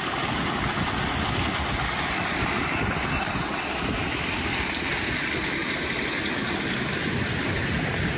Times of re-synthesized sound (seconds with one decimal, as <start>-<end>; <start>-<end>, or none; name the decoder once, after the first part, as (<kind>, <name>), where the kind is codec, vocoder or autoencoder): none